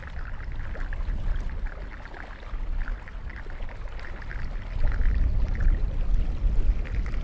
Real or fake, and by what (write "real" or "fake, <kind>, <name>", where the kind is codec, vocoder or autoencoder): real